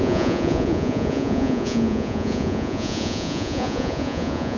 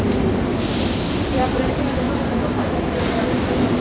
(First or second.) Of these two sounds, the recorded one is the second